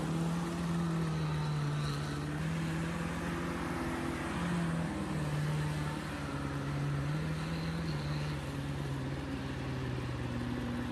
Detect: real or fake real